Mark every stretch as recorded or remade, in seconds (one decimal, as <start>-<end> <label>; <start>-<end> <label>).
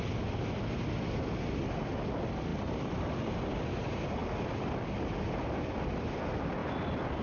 0.0-7.2 recorded